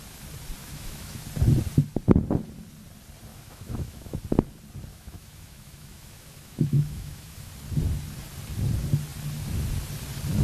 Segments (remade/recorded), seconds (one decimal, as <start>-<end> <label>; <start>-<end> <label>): 0.0-0.6 recorded; 0.6-1.2 remade; 1.2-3.3 recorded; 3.3-4.2 remade; 4.2-4.9 recorded; 4.9-7.5 remade; 7.5-10.4 recorded